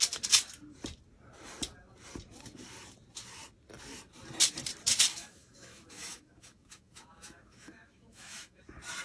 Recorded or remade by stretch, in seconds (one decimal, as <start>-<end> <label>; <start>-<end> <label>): 0.0-5.1 recorded; 5.1-8.6 remade; 8.6-9.0 recorded